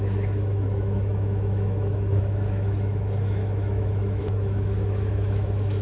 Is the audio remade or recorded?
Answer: remade